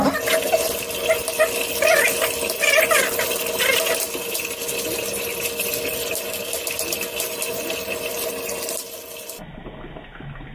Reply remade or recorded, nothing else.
recorded